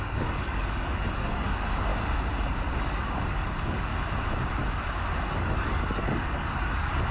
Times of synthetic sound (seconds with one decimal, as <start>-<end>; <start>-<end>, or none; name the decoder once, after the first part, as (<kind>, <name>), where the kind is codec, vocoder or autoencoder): 0.0-1.9 (codec, DAC); 2.8-3.9; 5.3-7.1